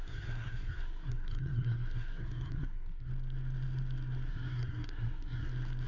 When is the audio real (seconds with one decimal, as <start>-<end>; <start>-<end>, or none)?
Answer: 3.1-4.3; 5.5-5.9